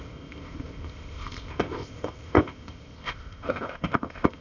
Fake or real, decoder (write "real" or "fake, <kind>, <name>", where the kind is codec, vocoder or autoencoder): fake, codec, ZipCodec